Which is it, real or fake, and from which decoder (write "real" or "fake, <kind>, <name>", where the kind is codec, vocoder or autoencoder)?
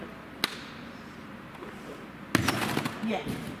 real